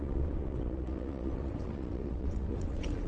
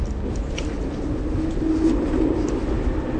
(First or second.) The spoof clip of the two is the first